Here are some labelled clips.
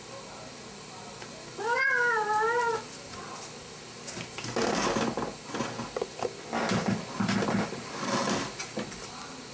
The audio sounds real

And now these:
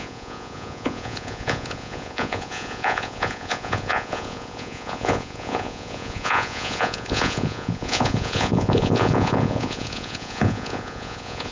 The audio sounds fake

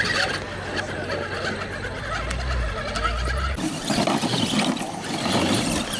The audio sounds real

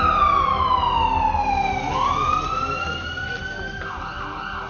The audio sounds real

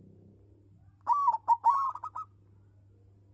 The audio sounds real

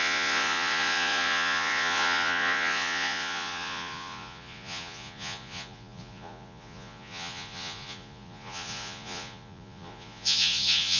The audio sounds fake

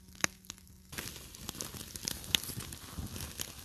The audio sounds real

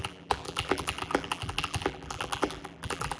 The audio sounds fake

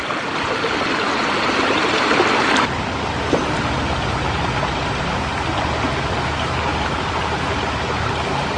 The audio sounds real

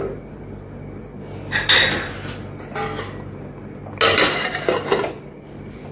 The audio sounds real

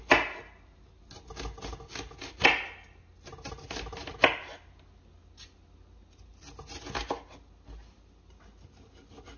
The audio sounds real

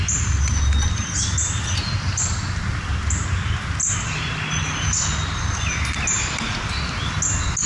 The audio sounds real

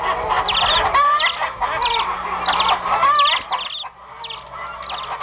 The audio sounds real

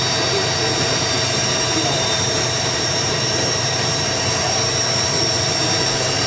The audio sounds fake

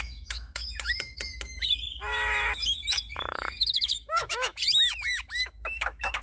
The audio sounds fake